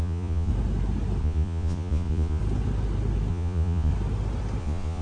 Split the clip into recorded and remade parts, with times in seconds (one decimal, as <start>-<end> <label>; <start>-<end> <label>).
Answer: 0.0-0.5 remade; 0.5-1.2 recorded; 1.2-2.4 remade; 2.4-3.3 recorded; 3.3-3.9 remade; 3.9-4.6 recorded; 4.6-5.0 remade